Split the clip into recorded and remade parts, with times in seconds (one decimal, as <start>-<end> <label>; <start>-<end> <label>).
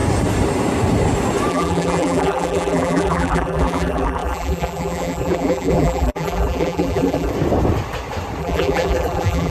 0.0-1.5 recorded; 1.5-7.3 remade; 7.3-8.4 recorded; 8.4-9.5 remade